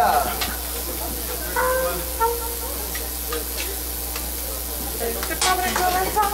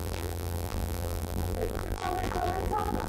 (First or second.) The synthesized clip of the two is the second